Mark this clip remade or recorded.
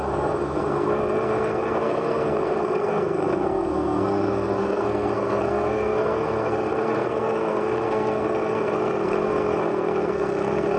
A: remade